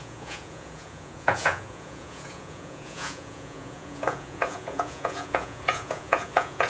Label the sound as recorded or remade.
remade